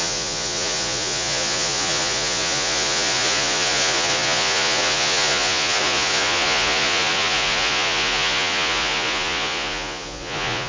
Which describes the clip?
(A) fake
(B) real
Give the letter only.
A